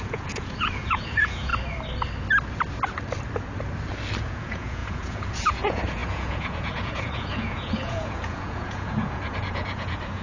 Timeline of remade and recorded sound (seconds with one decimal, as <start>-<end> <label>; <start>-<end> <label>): 0.0-1.5 remade; 1.5-4.2 recorded; 4.2-10.2 remade